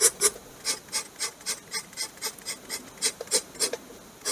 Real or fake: real